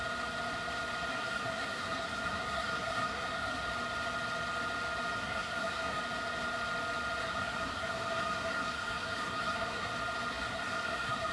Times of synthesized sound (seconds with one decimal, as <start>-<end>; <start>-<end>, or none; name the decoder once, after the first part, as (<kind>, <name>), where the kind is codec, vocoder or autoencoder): 1.1-3.6 (codec, SNAC); 5.2-6.0; 7.2-9.9; 10.3-11.3